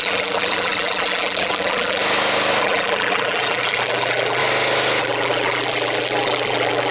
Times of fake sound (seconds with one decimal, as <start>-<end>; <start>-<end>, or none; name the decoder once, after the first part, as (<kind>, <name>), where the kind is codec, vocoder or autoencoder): 0.0-2.0 (vocoder, BigVGAN v2); 2.6-4.4; 5.0-6.9